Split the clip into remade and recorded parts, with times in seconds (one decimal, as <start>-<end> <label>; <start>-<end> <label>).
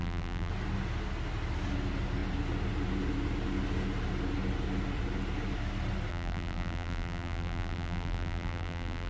0.0-0.5 remade; 0.5-6.1 recorded; 6.1-9.1 remade